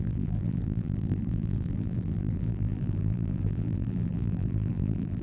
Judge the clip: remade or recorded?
remade